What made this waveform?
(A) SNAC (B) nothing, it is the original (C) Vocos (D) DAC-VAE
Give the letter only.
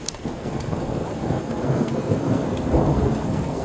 A